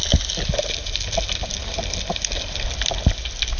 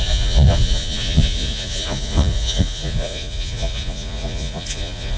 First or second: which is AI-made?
second